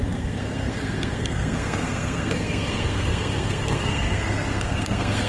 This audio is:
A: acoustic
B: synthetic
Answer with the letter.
B